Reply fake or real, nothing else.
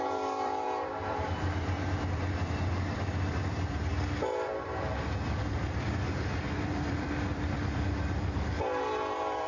fake